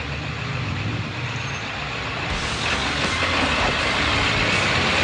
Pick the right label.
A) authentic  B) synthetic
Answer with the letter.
A